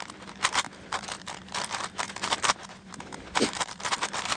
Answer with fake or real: fake